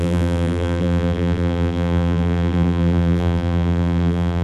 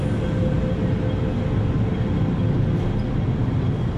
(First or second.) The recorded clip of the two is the second